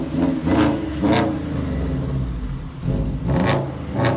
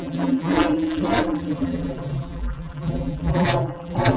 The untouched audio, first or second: first